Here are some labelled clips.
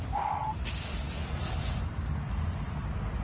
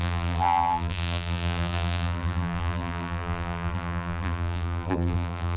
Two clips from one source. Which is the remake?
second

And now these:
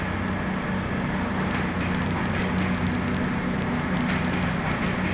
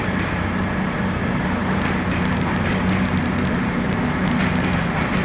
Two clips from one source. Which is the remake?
second